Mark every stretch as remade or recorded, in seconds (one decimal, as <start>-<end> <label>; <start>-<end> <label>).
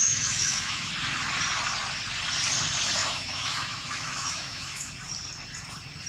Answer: 0.0-0.9 remade; 0.9-3.0 recorded; 3.0-4.9 remade; 4.9-6.1 recorded